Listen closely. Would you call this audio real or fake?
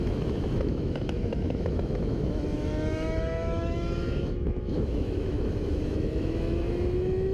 fake